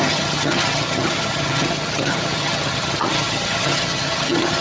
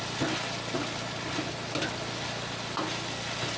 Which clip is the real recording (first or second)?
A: second